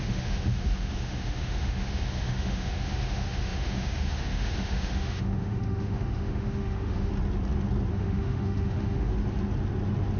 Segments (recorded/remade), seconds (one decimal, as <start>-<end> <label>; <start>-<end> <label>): 0.0-7.1 remade; 7.1-7.9 recorded; 7.9-9.1 remade; 9.1-10.2 recorded